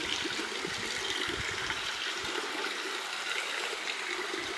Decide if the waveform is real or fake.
real